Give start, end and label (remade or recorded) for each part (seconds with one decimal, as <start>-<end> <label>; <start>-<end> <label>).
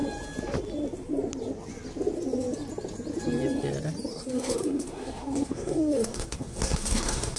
0.0-4.1 recorded; 4.1-7.4 remade